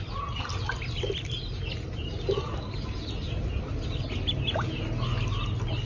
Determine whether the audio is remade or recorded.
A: recorded